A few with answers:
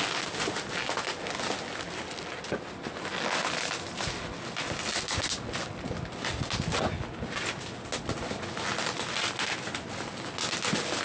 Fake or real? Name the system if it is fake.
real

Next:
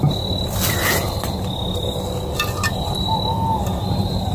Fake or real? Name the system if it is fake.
real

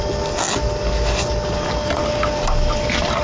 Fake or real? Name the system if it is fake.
real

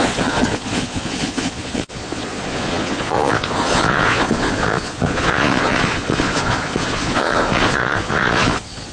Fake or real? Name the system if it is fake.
fake, vocoder, Vocos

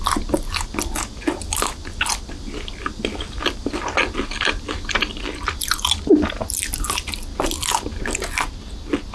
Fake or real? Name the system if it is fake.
real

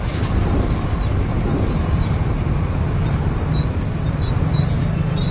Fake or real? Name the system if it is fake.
real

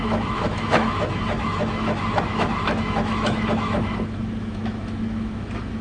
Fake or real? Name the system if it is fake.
fake, autoencoder, DAC-VAE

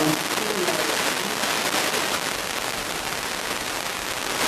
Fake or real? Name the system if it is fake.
real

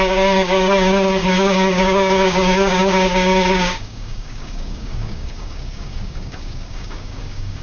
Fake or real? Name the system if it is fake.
fake, codec, DAC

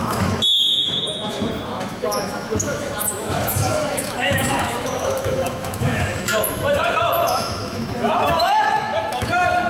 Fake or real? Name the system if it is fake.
fake, autoencoder, DAC-VAE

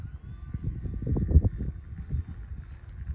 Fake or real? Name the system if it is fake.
real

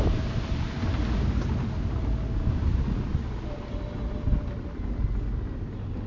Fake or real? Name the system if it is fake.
real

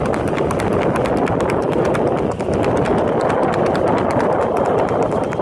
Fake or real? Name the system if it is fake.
real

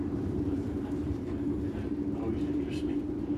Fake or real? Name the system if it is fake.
fake, vocoder, BigVGAN v2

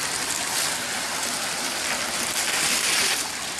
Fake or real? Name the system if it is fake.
real